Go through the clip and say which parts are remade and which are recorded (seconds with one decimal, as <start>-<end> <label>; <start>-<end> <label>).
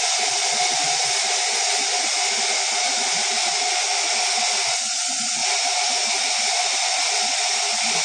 0.0-8.0 recorded